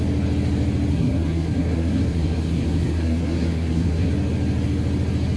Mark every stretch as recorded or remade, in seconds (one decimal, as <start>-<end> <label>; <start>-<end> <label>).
0.0-0.9 recorded; 0.9-4.1 remade; 4.1-5.4 recorded